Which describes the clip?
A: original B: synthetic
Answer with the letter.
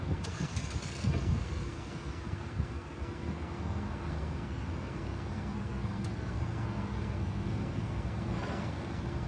B